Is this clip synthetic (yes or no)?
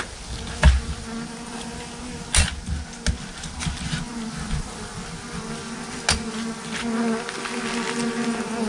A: no